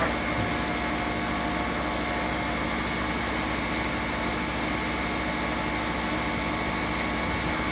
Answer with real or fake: real